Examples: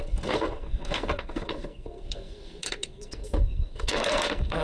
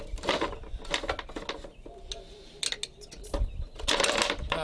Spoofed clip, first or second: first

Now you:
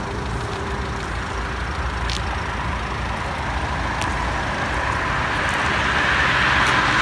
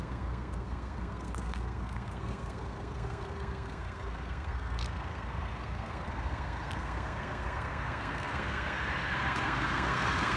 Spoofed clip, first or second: second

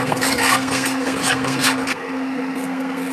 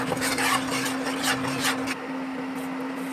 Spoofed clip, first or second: first